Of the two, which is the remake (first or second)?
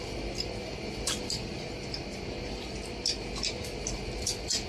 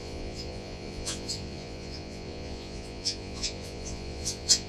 second